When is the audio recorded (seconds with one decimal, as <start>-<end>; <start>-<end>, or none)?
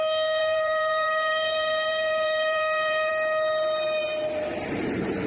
0.0-0.4; 3.1-4.5